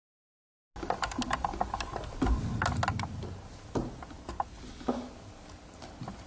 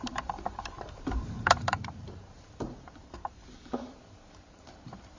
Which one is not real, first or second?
second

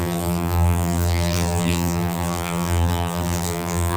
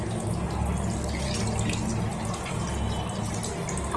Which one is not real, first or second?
first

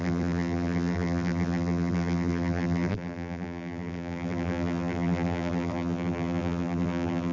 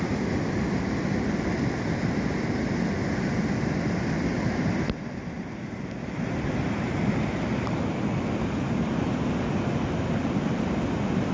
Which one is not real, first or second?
first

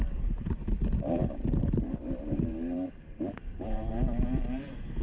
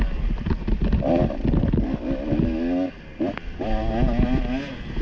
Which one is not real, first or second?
first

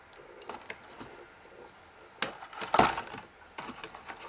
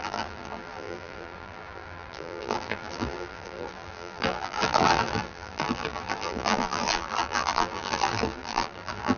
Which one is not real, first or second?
second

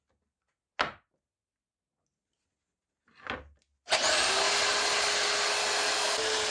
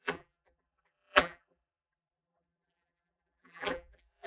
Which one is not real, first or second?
second